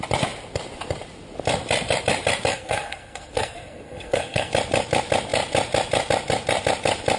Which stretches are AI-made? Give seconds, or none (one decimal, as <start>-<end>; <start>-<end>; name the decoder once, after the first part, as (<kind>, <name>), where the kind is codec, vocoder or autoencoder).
2.5-4.5 (codec, SNAC)